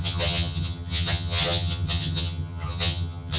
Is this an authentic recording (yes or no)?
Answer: no